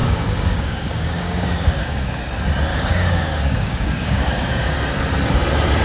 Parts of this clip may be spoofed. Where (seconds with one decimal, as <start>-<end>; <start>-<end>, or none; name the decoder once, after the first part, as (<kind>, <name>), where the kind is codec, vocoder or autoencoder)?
0.0-2.2 (codec, DAC); 2.7-4.8